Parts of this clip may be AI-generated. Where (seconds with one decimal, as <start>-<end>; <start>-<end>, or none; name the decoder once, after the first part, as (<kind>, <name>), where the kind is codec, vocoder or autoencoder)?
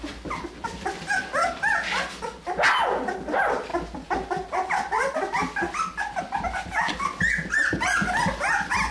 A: none